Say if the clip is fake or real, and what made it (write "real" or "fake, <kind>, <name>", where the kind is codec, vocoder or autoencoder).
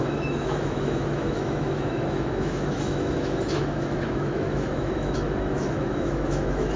fake, autoencoder, DAC-VAE